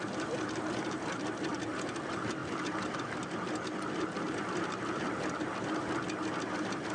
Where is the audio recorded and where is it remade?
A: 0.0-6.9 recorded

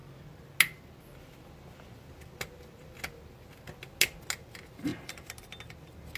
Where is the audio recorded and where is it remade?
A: 0.0-6.2 recorded